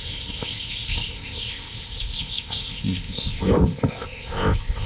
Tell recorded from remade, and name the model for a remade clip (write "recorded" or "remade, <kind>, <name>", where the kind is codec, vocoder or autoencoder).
remade, codec, ZipCodec